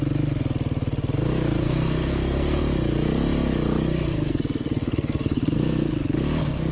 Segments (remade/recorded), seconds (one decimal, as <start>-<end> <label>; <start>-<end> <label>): 0.0-1.6 recorded; 1.6-2.6 remade; 2.6-4.1 recorded; 4.1-5.9 remade; 5.9-6.7 recorded